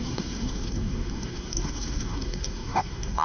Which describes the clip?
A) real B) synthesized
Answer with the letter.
B